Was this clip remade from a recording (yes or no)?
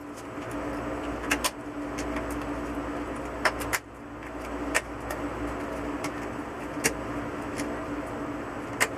no